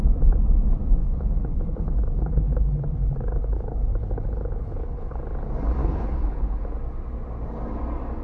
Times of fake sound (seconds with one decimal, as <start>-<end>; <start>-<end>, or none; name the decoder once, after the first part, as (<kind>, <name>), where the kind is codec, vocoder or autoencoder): 1.0-5.2 (codec, HILCodec); 5.8-6.6